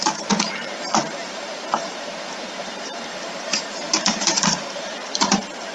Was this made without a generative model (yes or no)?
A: no